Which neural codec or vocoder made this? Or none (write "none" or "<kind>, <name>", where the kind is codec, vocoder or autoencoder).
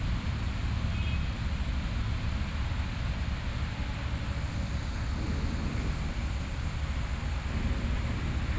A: none